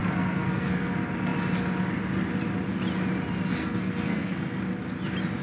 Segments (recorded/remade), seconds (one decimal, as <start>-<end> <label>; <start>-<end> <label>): 0.0-0.9 remade; 0.9-3.6 recorded; 3.6-4.6 remade; 4.6-5.4 recorded